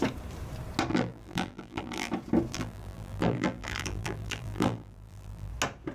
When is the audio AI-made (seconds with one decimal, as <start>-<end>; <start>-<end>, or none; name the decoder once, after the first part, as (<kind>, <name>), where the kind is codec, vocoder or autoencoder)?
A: 0.9-2.1 (vocoder, BigVGAN v2); 2.5-5.5